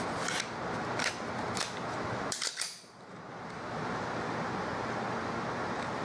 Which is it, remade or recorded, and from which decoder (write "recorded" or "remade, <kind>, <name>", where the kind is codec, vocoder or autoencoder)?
recorded